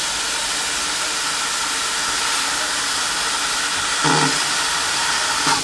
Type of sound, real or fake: real